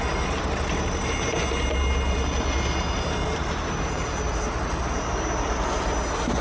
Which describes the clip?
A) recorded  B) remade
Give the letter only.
A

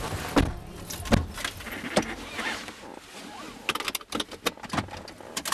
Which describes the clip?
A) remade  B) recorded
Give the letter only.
B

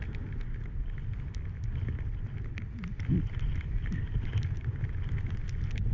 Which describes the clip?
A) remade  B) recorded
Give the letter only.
B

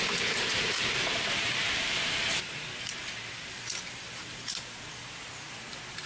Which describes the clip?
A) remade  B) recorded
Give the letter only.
A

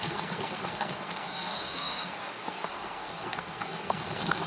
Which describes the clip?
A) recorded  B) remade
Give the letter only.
B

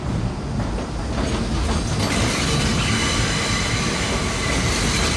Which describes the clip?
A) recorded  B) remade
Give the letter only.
A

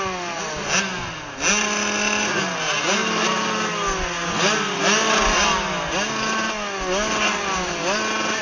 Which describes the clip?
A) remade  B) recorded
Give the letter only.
B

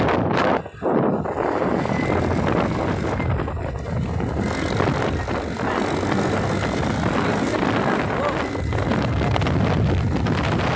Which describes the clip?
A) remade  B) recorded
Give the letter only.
B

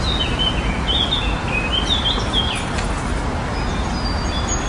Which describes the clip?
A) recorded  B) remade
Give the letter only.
A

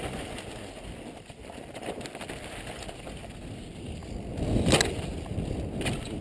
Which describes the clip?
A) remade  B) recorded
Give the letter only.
B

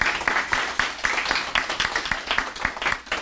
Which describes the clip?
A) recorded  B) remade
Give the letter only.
A